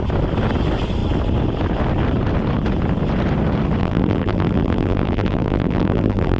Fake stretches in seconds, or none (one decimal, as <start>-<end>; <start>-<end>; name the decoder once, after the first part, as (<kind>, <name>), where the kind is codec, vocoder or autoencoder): 3.8-6.4 (vocoder, BigVGAN v2)